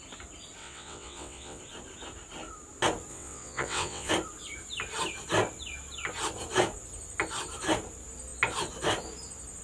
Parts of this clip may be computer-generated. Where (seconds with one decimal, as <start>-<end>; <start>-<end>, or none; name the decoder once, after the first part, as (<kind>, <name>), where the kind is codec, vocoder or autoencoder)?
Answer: 0.6-1.6 (vocoder, WaveNeXt); 3.1-4.1